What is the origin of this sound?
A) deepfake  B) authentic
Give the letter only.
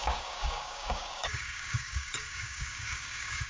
A